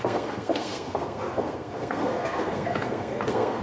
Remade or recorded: remade